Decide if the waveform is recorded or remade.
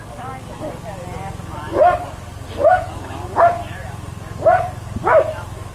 remade